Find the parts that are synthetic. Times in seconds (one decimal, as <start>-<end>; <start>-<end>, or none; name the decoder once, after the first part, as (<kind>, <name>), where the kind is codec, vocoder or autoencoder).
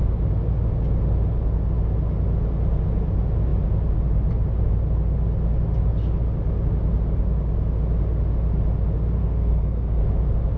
9.2-10.0 (codec, SNAC)